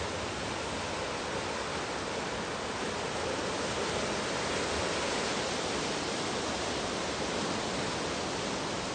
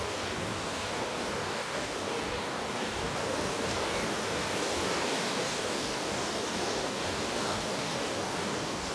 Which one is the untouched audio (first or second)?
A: first